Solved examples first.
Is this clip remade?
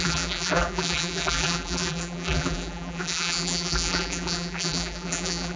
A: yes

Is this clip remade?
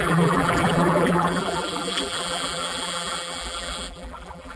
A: yes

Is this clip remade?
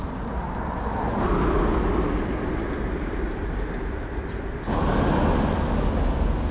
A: no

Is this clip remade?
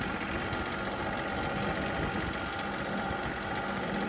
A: no